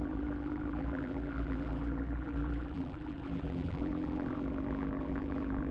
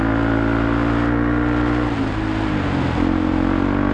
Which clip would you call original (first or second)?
second